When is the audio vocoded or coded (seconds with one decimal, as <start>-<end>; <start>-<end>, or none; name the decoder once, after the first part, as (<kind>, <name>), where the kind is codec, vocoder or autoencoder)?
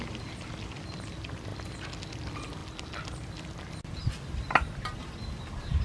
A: none